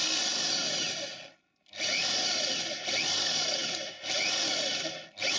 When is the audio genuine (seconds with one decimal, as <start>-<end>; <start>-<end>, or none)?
0.0-5.4